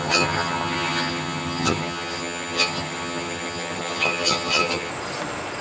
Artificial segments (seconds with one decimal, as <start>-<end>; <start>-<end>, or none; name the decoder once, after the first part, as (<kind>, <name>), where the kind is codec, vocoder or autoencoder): 0.0-4.9 (vocoder, HiFi-GAN)